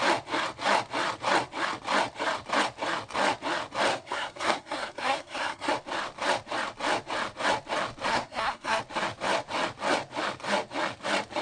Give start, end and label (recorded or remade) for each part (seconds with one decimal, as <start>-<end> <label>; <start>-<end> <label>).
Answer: 0.0-3.9 recorded; 3.9-5.7 remade; 5.7-8.1 recorded; 8.1-8.8 remade; 8.8-11.4 recorded

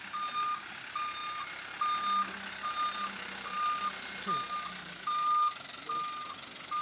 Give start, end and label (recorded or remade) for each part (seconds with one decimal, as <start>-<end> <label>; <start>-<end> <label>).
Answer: 0.0-6.8 recorded

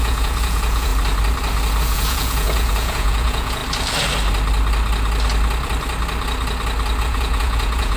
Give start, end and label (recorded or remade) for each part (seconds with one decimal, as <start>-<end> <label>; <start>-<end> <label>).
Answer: 0.0-0.9 remade; 0.9-1.8 recorded; 1.8-3.6 remade; 3.6-7.0 recorded; 7.0-8.0 remade

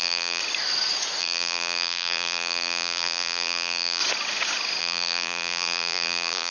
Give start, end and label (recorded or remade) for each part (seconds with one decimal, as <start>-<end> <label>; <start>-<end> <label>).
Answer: 0.0-0.4 remade; 0.4-1.2 recorded; 1.2-4.0 remade; 4.0-4.8 recorded; 4.8-6.5 remade

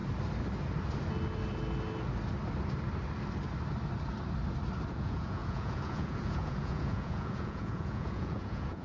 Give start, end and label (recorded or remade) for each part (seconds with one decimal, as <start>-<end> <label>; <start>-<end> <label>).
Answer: 0.0-4.9 recorded; 4.9-8.8 remade

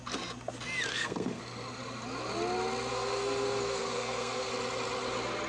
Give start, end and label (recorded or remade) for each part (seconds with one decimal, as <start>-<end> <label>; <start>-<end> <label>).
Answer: 0.0-0.9 recorded; 0.9-1.4 remade; 1.4-2.9 recorded; 2.9-4.5 remade; 4.5-5.5 recorded

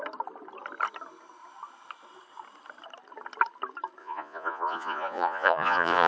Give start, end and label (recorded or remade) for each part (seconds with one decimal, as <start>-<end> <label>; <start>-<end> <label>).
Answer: 0.0-4.0 recorded; 4.0-6.1 remade